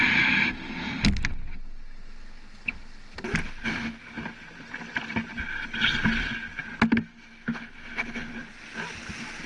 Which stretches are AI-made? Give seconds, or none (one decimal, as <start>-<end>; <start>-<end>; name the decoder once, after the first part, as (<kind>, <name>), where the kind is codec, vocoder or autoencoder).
none